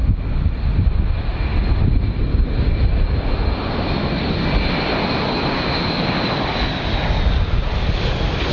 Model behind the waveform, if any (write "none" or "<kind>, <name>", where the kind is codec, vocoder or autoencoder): none